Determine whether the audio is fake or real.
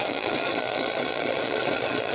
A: fake